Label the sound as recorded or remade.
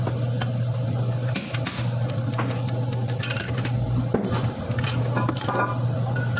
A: recorded